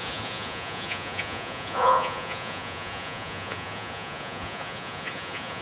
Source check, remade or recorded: remade